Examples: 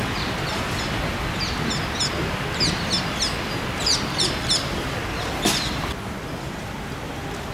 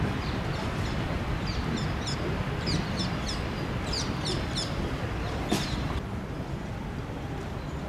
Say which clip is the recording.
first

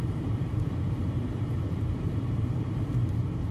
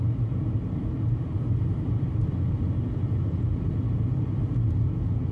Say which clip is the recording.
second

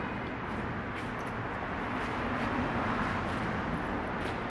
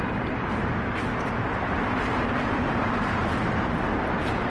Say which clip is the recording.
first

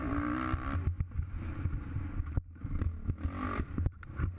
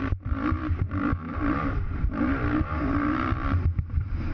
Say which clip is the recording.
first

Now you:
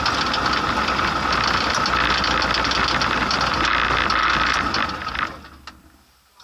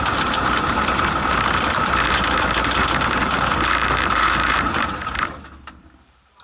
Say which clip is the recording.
first